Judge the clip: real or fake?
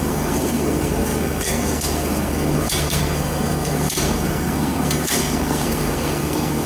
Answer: fake